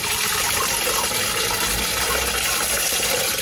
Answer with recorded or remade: recorded